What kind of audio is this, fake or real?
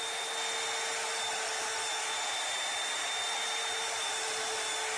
real